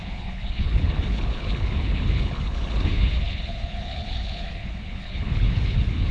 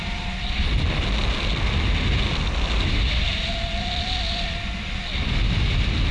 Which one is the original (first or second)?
second